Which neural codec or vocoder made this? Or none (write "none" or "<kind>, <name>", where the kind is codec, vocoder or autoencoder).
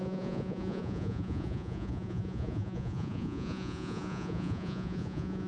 vocoder, Vocos